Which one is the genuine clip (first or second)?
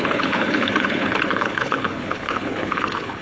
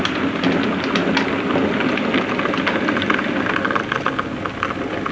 second